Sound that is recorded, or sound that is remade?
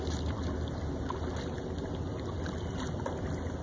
recorded